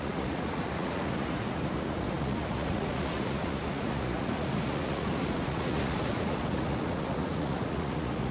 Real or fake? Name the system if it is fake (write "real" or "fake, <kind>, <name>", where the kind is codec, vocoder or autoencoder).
fake, vocoder, Vocos